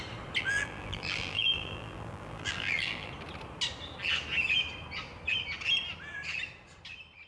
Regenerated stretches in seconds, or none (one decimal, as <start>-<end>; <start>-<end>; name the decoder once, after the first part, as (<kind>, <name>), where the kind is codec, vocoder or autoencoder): 0.4-3.1 (vocoder, BigVGAN v2)